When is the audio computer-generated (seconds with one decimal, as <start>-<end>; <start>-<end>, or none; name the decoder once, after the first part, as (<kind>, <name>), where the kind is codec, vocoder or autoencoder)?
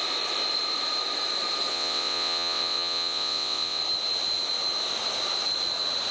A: 1.7-3.8 (vocoder, WaveNeXt)